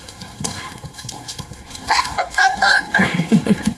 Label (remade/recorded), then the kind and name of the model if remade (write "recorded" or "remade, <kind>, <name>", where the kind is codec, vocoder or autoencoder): remade, codec, SNAC